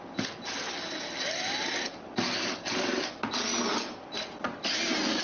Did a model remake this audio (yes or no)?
no